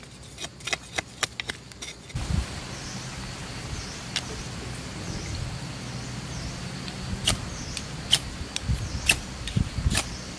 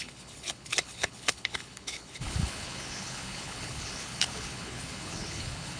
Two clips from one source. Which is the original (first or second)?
first